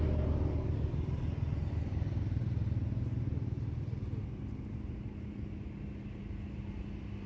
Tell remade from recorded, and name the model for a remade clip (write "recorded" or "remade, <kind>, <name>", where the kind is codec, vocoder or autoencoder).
recorded